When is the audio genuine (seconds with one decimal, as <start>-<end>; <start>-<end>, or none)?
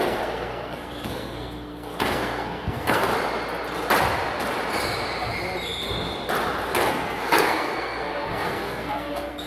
3.1-6.9